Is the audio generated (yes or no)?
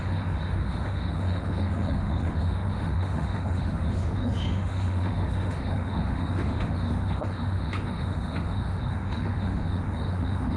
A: yes